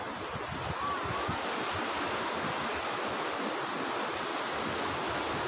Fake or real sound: real